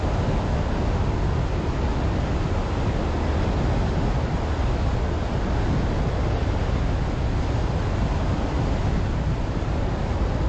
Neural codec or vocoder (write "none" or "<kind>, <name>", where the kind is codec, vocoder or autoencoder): none